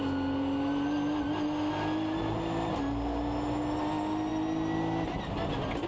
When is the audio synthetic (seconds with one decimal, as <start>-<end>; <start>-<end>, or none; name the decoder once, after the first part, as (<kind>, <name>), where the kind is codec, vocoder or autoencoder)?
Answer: none